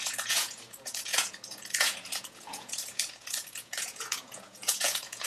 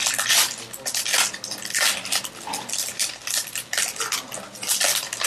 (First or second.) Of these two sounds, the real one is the second